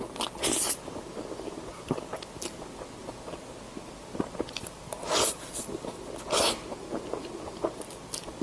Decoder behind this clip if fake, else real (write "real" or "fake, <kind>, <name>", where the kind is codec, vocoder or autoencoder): real